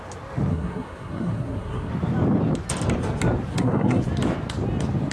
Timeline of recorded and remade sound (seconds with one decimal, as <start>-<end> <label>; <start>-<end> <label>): 0.0-0.5 recorded; 0.5-1.9 remade; 1.9-3.5 recorded; 3.5-4.0 remade; 4.0-5.1 recorded